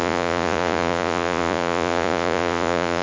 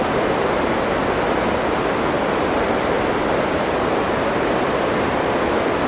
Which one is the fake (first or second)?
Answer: first